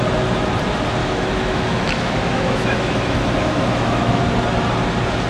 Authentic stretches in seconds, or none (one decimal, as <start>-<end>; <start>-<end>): 0.0-1.0; 4.2-5.3